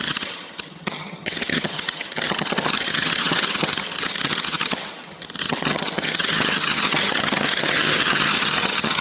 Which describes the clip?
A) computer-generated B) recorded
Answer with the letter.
A